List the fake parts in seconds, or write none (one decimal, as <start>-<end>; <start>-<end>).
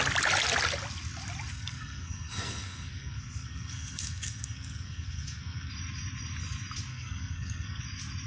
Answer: 1.5-5.7; 6.9-7.8